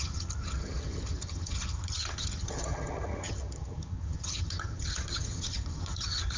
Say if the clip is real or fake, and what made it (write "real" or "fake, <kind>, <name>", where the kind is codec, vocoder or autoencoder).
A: fake, vocoder, HiFi-GAN